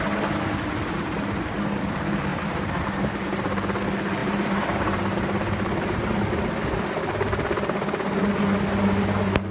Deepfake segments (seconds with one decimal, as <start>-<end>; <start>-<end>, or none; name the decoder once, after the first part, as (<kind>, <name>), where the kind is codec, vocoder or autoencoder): 2.3-3.1 (vocoder, BigVGAN v2); 4.2-6.0